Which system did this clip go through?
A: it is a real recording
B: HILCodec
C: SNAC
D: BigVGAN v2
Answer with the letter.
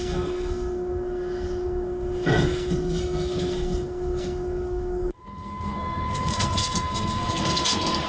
C